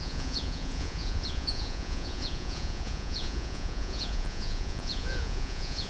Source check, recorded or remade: remade